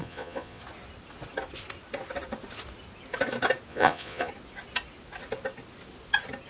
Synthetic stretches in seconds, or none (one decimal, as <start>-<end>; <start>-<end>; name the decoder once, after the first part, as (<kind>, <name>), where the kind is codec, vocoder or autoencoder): 0.0-0.6 (vocoder, Vocos); 3.7-4.3